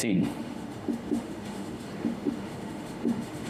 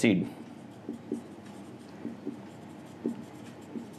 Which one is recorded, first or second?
second